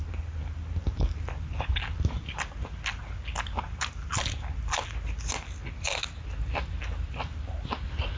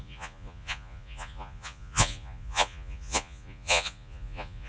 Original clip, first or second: first